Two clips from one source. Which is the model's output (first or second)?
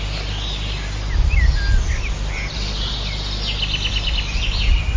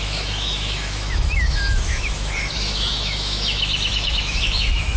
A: second